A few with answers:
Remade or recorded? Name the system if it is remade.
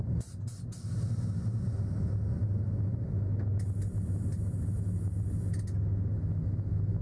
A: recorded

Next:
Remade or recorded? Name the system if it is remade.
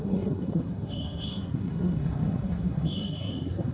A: remade, codec, SNAC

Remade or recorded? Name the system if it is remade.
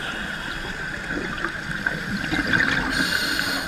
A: recorded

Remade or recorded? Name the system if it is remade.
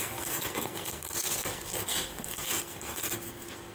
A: remade, codec, SNAC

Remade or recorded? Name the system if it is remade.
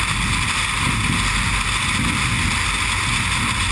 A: recorded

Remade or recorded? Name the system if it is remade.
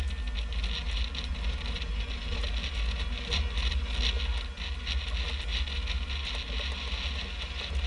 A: recorded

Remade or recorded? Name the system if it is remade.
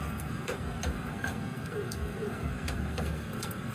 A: remade, codec, SNAC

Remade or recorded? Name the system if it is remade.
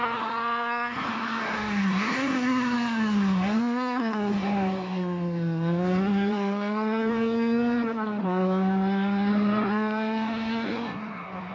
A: remade, codec, SNAC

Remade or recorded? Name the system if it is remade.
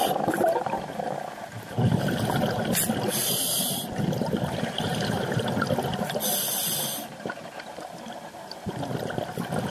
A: recorded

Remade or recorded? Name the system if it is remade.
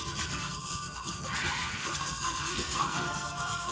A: remade, codec, SNAC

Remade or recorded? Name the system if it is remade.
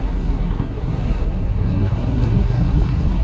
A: remade, codec, SNAC